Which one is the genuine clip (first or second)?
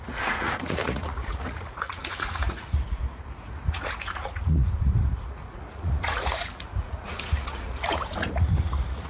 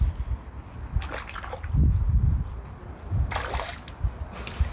second